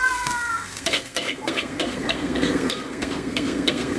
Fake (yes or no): yes